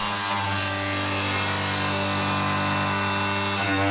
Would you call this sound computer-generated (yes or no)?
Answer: no